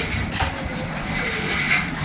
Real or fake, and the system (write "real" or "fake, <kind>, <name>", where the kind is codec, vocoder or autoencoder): real